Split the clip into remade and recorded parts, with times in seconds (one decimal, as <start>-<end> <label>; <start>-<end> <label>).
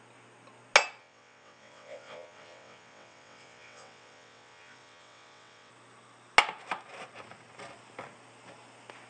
0.0-1.0 recorded; 1.0-5.7 remade; 5.7-9.1 recorded